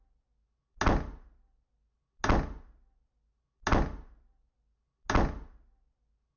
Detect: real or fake real